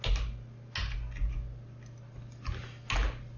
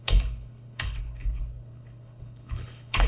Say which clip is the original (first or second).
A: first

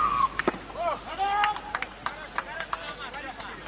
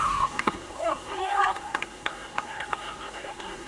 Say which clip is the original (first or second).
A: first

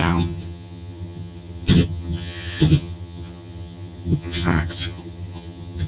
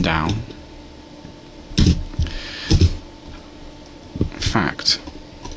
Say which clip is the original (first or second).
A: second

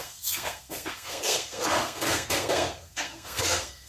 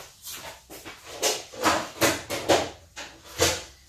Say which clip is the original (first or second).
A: second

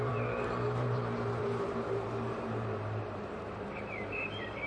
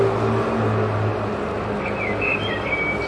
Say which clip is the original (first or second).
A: second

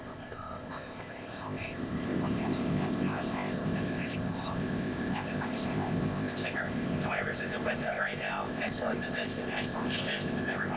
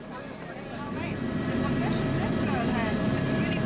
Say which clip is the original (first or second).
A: second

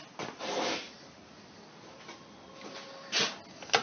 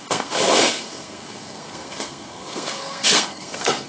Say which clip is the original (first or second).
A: first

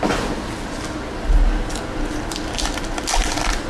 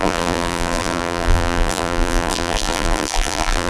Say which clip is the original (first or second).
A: first